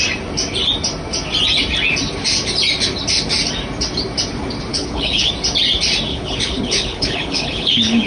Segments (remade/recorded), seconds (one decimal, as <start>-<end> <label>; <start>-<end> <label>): 0.0-4.7 recorded; 4.7-5.3 remade; 5.3-6.1 recorded; 6.1-8.1 remade